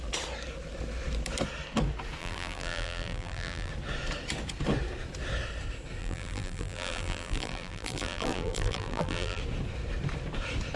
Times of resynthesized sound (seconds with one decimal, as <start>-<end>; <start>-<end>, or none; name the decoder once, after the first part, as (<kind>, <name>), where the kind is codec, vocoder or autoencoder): 2.2-3.7 (vocoder, BigVGAN v2); 6.0-9.4